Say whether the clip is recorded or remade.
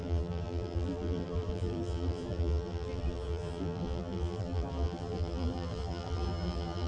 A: remade